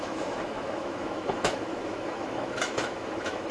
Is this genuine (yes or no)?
no